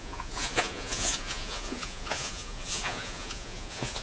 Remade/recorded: remade